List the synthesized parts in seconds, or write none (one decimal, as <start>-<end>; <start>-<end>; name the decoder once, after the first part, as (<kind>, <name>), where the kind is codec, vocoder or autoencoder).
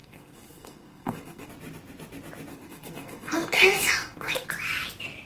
0.0-1.5 (codec, SNAC); 2.5-4.5